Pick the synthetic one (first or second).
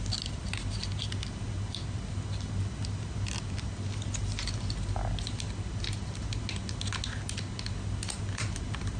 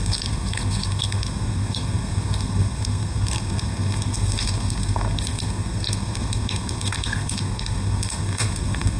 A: second